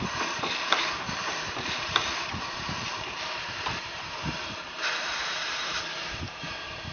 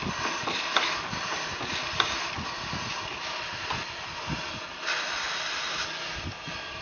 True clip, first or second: second